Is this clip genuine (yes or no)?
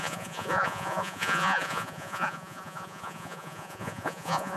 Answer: no